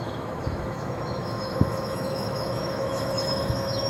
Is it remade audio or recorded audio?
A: remade